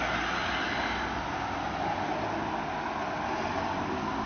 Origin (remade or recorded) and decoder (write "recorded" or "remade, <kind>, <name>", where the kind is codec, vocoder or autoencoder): recorded